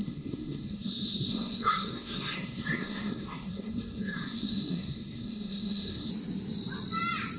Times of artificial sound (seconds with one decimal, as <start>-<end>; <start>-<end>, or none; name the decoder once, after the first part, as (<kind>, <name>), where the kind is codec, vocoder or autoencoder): 0.0-6.1 (codec, SNAC)